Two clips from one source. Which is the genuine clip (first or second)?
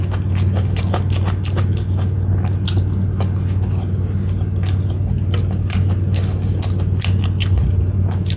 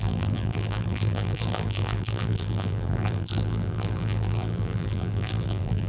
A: first